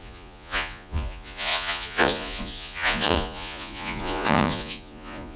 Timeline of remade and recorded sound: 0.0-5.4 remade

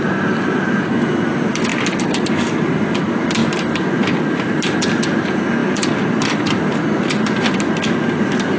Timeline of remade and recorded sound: 0.0-8.6 recorded

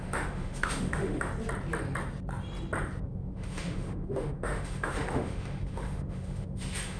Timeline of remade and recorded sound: 0.0-1.3 remade; 1.3-3.0 recorded; 3.0-7.0 remade

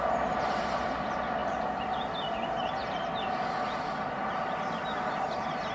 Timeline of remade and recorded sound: 0.0-5.7 recorded

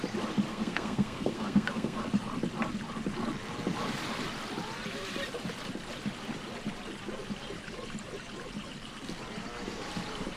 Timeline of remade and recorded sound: 0.0-0.5 recorded; 0.5-2.0 remade; 2.0-10.4 recorded

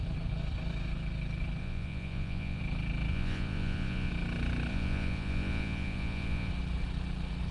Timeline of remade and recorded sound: 0.0-1.6 recorded; 1.6-2.6 remade; 2.6-3.1 recorded; 3.1-4.1 remade; 4.1-4.7 recorded; 4.7-6.5 remade; 6.5-7.5 recorded

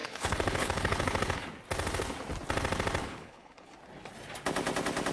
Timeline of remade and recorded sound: 0.0-1.5 remade; 1.5-3.0 recorded; 3.0-3.7 remade; 3.7-5.1 recorded

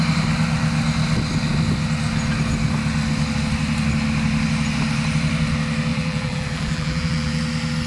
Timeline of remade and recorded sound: 0.0-5.9 recorded; 5.9-7.4 remade; 7.4-7.9 recorded